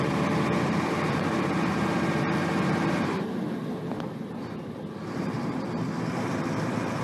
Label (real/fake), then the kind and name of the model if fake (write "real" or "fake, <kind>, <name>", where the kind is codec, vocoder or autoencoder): fake, vocoder, BigVGAN v2